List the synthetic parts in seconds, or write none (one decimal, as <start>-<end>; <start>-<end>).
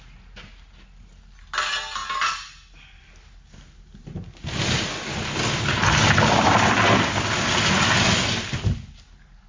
none